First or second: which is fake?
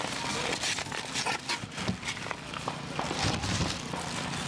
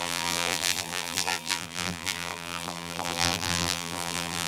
second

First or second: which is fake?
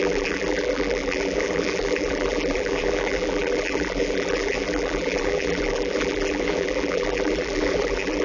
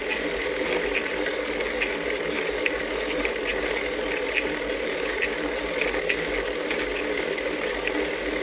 first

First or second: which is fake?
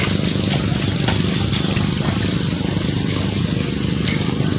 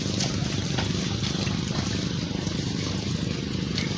second